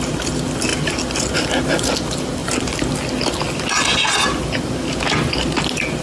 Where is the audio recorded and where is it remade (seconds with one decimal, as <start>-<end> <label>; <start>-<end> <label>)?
0.0-6.0 recorded